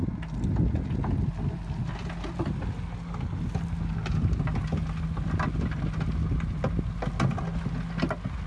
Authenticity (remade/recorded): recorded